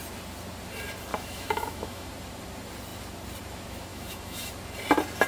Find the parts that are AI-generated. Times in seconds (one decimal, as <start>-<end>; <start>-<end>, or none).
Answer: 1.1-2.1; 3.9-4.5